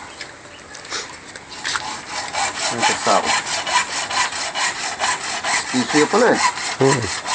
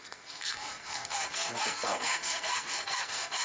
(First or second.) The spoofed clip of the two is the second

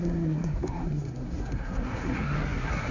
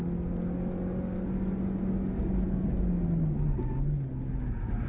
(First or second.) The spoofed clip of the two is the first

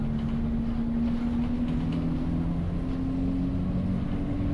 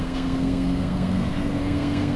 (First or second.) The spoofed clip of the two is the second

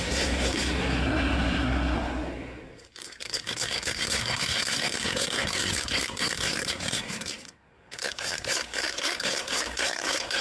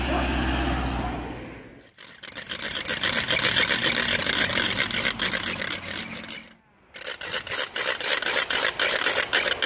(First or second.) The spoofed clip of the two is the first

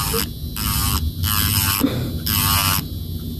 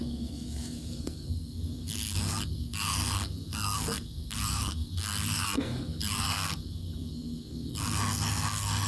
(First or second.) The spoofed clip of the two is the second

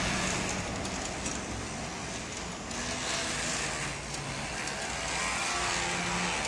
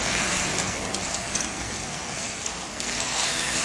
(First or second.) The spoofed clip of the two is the second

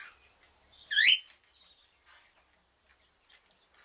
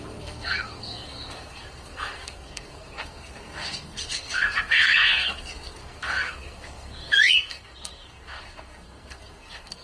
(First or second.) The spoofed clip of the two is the second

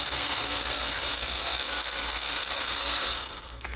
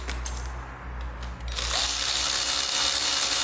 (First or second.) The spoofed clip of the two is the first